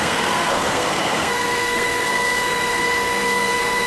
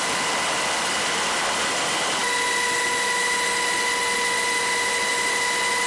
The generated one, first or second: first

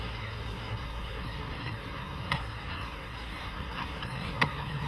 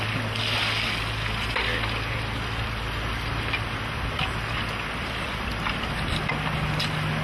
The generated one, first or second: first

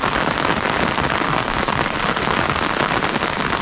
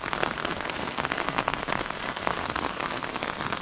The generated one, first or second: second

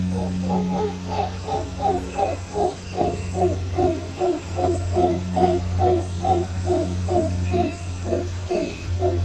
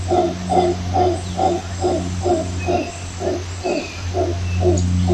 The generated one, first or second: first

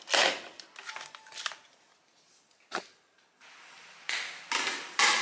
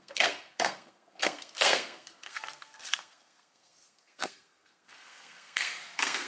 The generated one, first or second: second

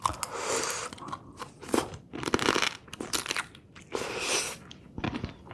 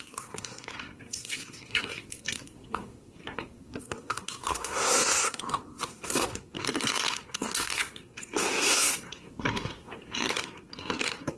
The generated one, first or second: second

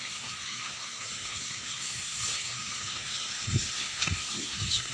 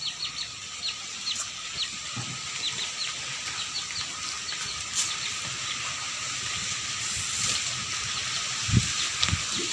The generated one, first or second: first